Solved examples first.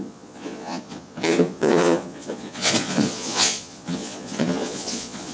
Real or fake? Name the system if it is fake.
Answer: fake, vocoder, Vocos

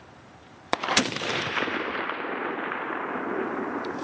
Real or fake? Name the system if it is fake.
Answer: fake, vocoder, BigVGAN v2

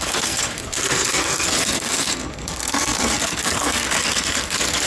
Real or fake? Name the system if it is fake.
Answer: fake, codec, SNAC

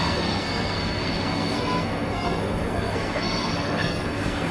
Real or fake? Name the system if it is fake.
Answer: fake, codec, SNAC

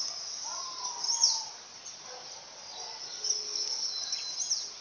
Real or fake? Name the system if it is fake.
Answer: real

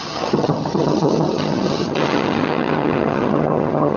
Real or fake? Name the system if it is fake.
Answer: fake, vocoder, HiFi-GAN